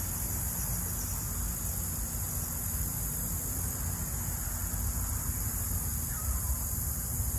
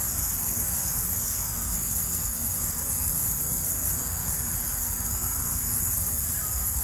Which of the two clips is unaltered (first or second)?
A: first